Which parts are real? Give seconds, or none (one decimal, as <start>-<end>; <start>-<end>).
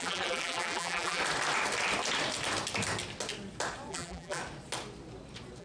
1.2-3.9; 4.4-5.6